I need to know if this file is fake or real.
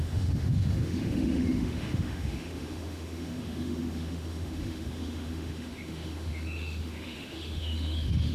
fake